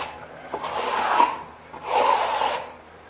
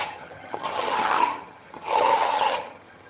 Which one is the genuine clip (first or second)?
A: first